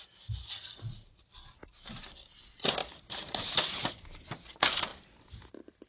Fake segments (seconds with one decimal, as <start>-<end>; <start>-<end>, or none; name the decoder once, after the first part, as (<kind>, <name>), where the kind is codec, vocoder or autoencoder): none